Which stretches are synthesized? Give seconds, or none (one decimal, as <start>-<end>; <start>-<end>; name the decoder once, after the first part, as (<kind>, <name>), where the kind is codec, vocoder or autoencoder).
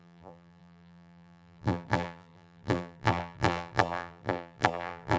0.0-5.2 (vocoder, BigVGAN v2)